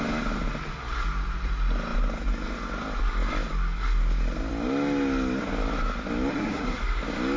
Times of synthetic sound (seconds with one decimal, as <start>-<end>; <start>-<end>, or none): 6.3-6.8